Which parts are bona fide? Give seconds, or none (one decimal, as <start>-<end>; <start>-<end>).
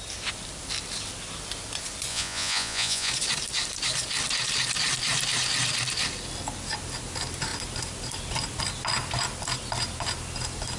0.0-2.1; 3.1-10.8